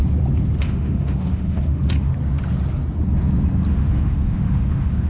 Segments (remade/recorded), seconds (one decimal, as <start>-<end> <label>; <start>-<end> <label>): 0.0-0.6 recorded; 0.6-2.1 remade; 2.1-3.7 recorded; 3.7-5.1 remade